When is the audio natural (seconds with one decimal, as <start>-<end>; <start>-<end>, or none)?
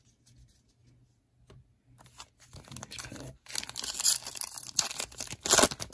0.0-5.9